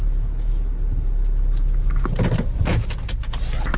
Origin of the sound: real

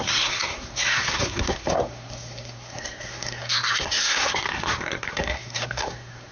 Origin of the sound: fake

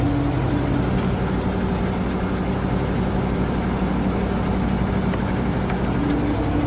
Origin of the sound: real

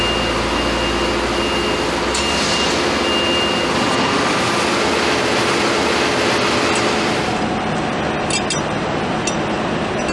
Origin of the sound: real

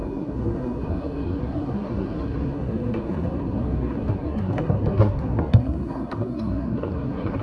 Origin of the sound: fake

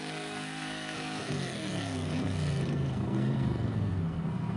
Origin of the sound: fake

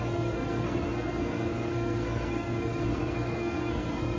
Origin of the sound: fake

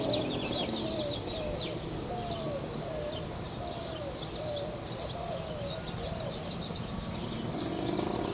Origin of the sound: real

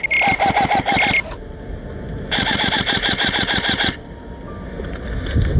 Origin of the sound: real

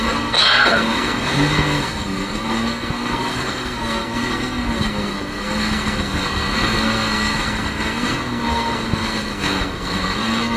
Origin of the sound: fake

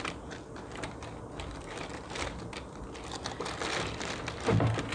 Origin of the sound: real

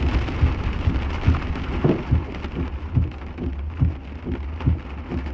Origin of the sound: real